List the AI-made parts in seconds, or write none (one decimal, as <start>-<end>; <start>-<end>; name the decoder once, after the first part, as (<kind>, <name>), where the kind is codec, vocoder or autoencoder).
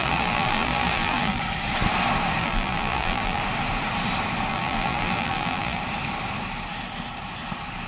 0.0-1.4 (vocoder, BigVGAN v2); 2.4-3.4; 4.5-5.8